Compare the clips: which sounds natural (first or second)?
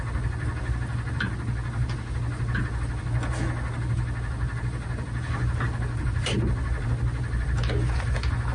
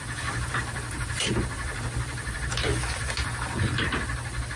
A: first